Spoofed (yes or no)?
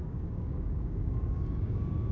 yes